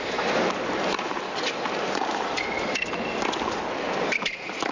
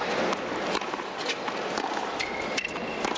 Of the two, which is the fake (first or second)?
first